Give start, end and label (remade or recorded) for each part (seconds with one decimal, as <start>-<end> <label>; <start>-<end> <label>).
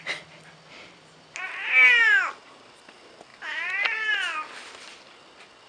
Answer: 0.0-5.7 recorded